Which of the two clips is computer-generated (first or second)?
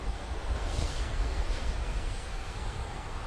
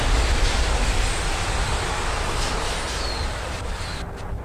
first